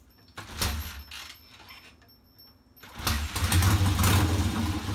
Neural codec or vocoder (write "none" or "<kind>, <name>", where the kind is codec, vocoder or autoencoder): none